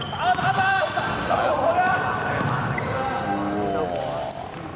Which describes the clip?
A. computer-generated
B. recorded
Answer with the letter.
B